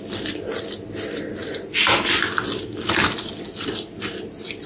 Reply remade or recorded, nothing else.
recorded